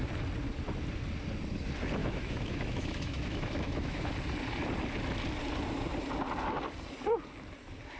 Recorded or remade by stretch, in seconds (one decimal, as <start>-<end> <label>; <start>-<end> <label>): 0.0-2.0 recorded; 2.0-4.1 remade; 4.1-8.0 recorded

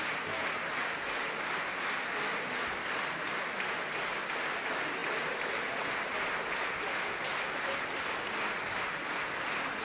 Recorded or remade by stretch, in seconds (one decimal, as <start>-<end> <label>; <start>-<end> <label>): 0.0-9.8 recorded

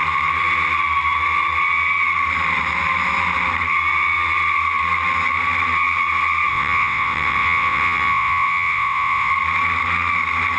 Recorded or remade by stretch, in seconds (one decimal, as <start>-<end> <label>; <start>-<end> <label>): 0.0-6.5 recorded; 6.5-9.3 remade; 9.3-10.6 recorded

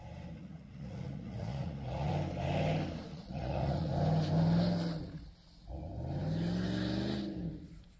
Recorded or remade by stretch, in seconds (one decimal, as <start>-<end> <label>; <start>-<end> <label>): 0.0-0.4 recorded; 0.4-2.1 remade; 2.1-3.1 recorded; 3.1-3.9 remade; 3.9-8.0 recorded

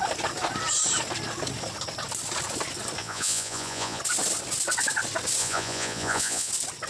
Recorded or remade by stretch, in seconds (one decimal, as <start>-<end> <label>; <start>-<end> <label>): 0.0-3.0 recorded; 3.0-4.0 remade; 4.0-5.4 recorded; 5.4-6.5 remade; 6.5-6.9 recorded